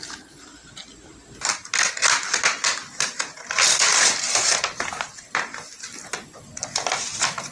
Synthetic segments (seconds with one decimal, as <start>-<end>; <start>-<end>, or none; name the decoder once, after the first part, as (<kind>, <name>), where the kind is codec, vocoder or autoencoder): none